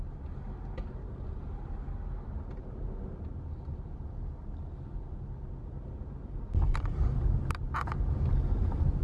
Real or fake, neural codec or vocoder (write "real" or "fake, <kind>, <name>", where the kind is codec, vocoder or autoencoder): real